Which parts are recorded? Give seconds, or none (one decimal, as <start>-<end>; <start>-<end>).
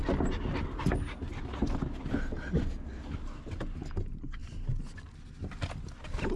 0.0-6.4